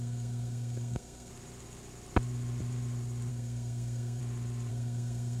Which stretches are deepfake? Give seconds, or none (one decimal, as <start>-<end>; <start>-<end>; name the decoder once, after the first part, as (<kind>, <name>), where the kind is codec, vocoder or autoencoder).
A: 0.0-1.3 (codec, SNAC); 3.3-4.2; 4.7-5.4